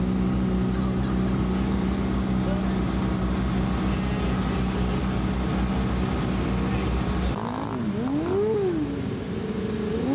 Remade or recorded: recorded